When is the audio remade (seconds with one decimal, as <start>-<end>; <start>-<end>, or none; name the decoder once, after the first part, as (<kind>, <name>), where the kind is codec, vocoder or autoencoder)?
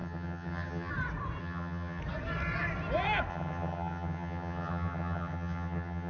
0.0-0.9 (vocoder, HiFi-GAN); 1.4-2.0; 3.3-6.1